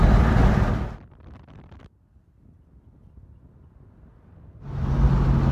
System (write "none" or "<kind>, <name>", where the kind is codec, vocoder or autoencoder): none